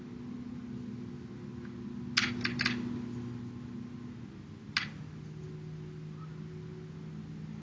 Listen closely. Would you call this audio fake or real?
real